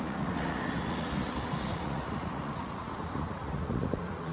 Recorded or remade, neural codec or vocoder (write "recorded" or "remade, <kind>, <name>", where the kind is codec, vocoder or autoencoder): remade, vocoder, Vocos